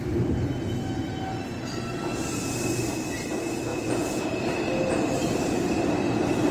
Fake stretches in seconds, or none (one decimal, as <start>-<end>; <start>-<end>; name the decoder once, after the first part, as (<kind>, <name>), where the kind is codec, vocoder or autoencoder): 3.7-4.3 (vocoder, Vocos)